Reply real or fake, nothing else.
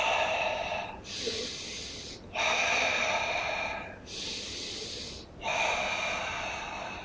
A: real